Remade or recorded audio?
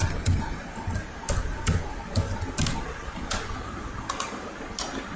recorded